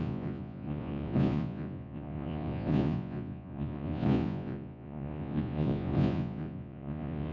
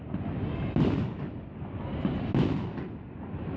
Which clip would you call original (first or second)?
second